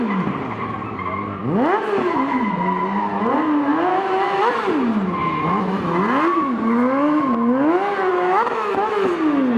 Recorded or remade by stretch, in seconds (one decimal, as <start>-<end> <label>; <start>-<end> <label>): 0.0-3.9 recorded; 3.9-4.5 remade; 4.5-8.1 recorded; 8.1-9.1 remade; 9.1-9.6 recorded